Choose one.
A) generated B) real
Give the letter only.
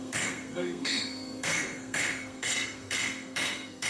A